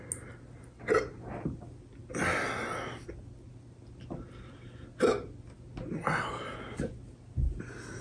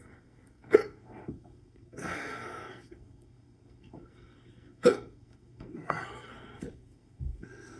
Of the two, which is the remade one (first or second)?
second